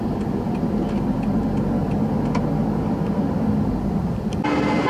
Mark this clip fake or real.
real